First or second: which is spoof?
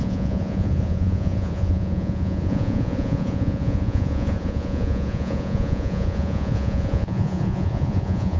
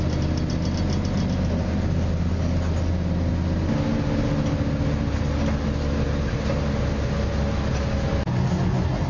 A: first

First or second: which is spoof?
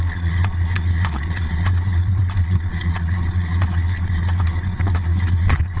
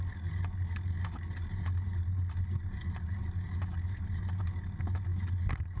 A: first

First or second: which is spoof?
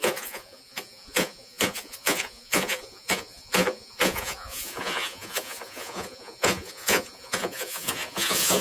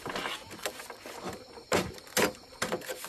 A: first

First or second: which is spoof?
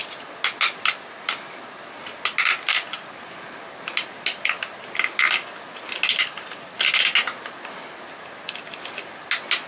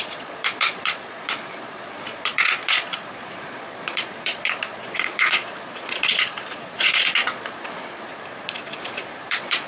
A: second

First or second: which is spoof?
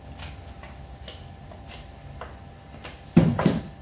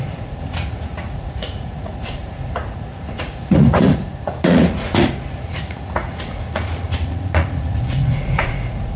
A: second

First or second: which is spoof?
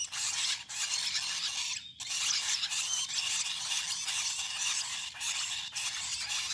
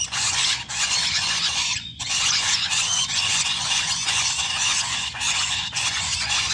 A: second